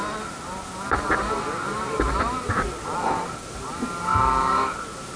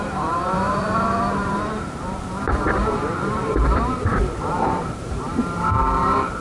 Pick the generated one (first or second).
second